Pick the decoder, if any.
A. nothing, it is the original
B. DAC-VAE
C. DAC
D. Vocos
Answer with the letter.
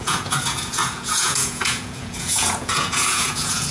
D